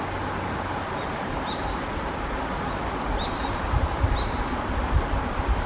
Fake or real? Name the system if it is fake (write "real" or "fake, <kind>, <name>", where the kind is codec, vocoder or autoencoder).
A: real